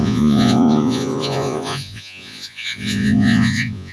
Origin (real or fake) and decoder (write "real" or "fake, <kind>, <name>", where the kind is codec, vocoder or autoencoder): fake, vocoder, Vocos